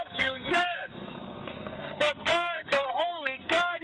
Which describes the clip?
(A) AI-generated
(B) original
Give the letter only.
A